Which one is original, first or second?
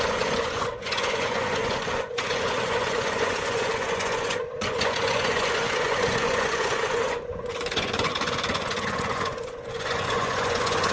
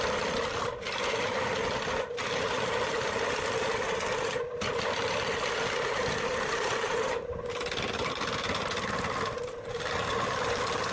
second